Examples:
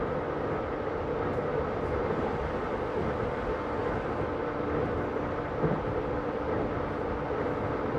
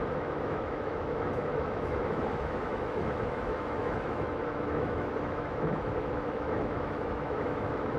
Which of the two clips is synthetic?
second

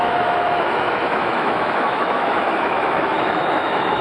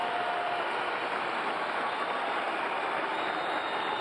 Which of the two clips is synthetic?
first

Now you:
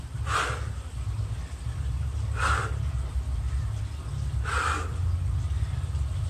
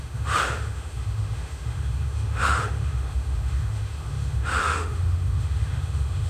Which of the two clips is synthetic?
second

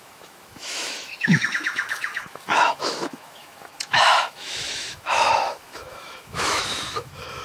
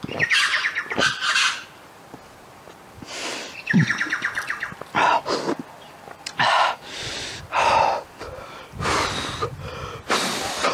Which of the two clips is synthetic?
first